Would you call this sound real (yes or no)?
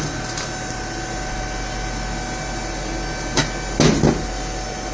yes